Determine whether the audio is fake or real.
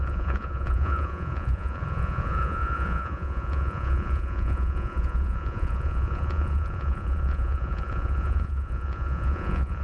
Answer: fake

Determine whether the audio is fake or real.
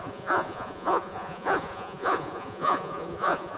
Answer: fake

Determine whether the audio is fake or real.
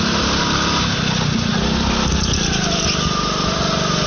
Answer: real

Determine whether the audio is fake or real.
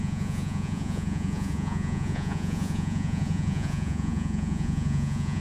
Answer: fake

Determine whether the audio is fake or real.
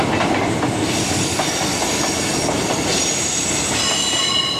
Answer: real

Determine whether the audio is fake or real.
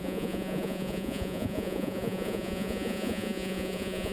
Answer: fake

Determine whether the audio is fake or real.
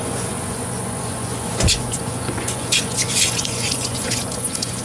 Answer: fake